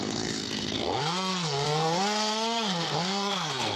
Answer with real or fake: fake